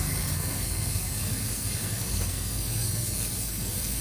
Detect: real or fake fake